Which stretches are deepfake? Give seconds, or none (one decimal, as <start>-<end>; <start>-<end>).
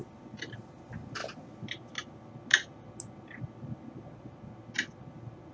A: none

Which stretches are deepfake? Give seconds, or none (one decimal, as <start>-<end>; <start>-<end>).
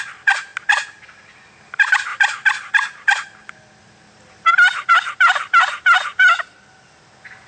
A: none